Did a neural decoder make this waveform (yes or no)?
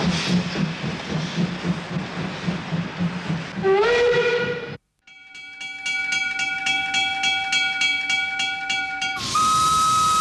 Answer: no